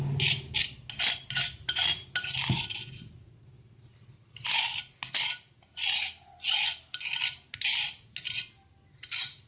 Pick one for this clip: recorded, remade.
recorded